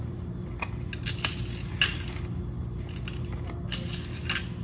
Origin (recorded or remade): recorded